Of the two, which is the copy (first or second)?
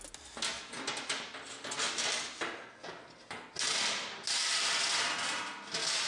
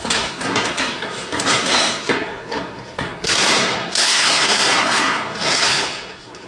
second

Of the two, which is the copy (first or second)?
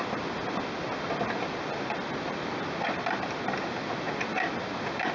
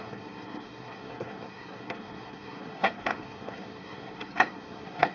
second